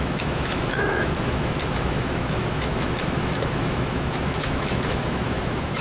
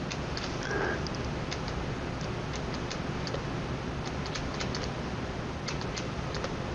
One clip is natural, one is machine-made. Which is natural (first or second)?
second